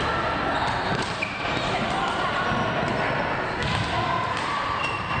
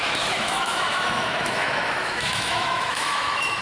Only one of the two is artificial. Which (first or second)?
second